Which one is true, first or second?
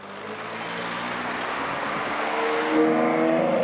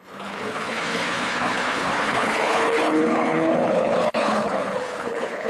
first